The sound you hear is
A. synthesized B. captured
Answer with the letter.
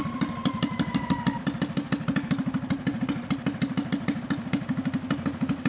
B